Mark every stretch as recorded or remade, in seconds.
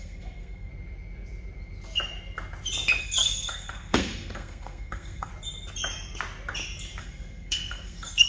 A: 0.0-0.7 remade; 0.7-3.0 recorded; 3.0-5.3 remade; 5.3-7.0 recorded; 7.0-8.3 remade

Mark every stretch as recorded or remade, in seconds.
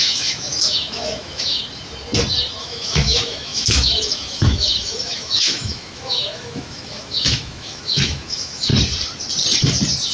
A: 0.0-1.6 remade; 1.6-2.6 recorded; 2.6-8.7 remade; 8.7-10.1 recorded